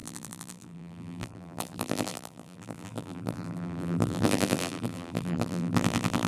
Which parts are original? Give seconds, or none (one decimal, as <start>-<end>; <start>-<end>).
none